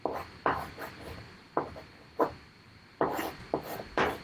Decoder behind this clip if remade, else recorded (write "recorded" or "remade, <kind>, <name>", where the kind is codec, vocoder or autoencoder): recorded